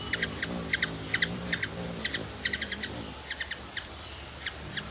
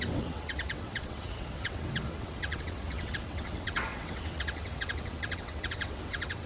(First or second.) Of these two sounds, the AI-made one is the second